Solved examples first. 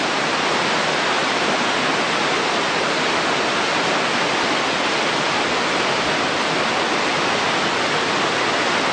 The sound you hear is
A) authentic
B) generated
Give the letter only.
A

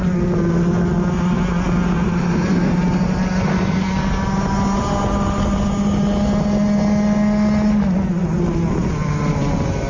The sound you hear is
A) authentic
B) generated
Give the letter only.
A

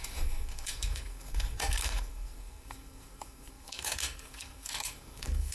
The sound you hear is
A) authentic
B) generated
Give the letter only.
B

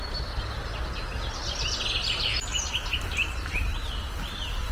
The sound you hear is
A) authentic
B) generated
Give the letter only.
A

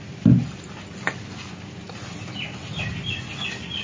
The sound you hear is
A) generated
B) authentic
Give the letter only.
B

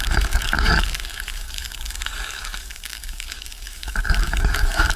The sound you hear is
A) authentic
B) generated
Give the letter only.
B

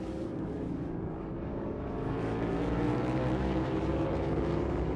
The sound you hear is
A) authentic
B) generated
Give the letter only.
B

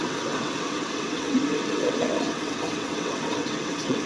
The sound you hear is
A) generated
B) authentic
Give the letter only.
A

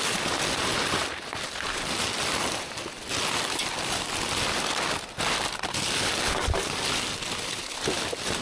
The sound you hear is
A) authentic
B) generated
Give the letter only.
A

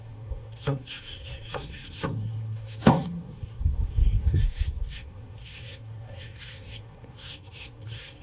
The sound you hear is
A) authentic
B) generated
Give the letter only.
B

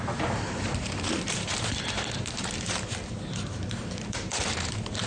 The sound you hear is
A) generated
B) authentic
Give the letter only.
A